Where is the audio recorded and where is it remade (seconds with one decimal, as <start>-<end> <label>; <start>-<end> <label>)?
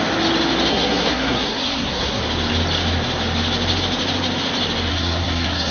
0.0-0.7 recorded; 0.7-2.2 remade; 2.2-4.9 recorded; 4.9-5.7 remade